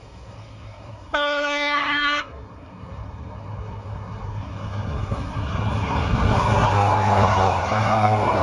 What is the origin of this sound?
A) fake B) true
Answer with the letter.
A